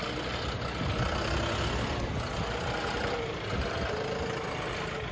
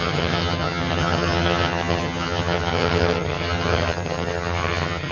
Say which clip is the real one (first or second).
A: first